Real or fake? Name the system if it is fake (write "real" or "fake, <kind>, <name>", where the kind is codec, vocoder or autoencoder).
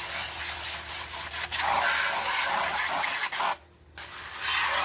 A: real